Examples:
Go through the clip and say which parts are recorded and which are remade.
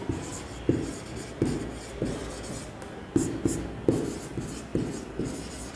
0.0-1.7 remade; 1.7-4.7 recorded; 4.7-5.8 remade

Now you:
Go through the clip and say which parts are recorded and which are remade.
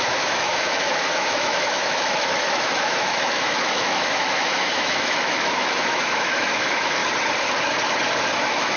0.0-7.0 remade; 7.0-8.4 recorded; 8.4-8.8 remade